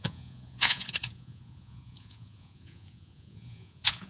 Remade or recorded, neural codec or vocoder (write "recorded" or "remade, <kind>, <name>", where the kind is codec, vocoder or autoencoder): remade, vocoder, Vocos